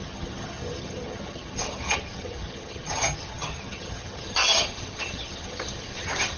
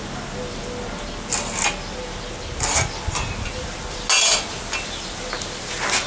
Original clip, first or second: second